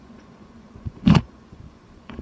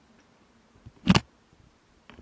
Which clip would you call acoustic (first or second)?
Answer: second